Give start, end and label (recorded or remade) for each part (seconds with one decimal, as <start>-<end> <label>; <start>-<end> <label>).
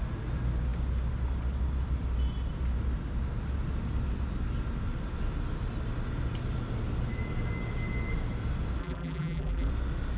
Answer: 0.0-8.8 recorded; 8.8-9.7 remade; 9.7-10.2 recorded